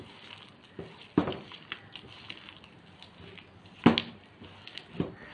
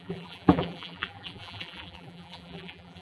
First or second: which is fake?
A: second